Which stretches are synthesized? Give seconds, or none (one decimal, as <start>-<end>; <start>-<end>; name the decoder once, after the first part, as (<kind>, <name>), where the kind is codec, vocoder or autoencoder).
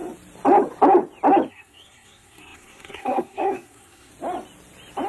1.5-4.1 (codec, SNAC)